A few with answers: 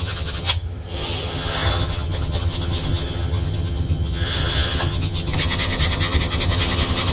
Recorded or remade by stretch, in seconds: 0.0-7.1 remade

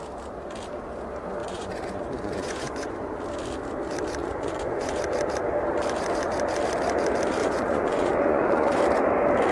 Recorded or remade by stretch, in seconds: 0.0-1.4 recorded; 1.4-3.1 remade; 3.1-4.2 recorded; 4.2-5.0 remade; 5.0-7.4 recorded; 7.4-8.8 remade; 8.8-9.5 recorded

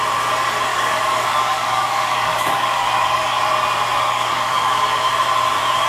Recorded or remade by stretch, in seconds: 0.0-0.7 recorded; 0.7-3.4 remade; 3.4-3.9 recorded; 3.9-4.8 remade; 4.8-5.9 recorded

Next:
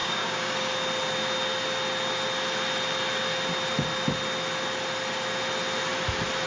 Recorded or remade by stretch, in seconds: 0.0-0.7 remade; 0.7-6.5 recorded